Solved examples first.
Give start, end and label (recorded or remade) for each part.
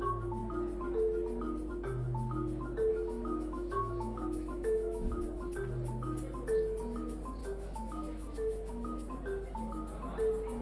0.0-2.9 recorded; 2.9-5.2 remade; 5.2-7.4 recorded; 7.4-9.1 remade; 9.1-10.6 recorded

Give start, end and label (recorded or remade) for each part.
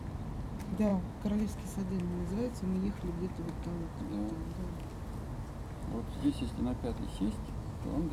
0.0-8.1 recorded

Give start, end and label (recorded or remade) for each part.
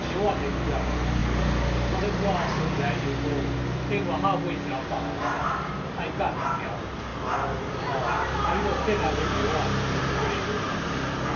0.0-11.4 recorded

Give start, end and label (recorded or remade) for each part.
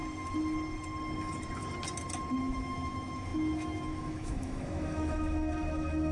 0.0-2.4 recorded; 2.4-6.1 remade